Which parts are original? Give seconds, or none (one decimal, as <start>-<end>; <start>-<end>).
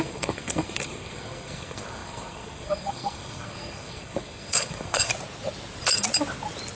5.1-6.8